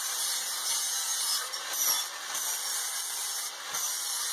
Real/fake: real